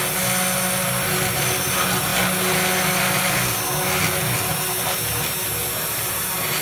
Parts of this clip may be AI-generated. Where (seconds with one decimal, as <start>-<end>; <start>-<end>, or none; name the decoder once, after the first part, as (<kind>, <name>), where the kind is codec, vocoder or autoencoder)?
none